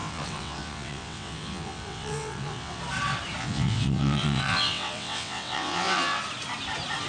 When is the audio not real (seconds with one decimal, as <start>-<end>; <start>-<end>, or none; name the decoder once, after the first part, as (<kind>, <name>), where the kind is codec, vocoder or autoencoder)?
0.0-2.8 (vocoder, WaveNeXt); 3.4-6.2